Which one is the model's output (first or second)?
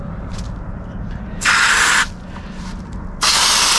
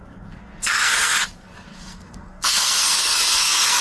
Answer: second